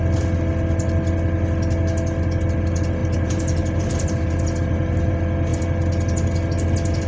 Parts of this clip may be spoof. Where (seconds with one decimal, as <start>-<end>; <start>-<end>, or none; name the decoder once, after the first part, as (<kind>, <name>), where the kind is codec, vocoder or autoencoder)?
3.0-5.1 (vocoder, BigVGAN v2)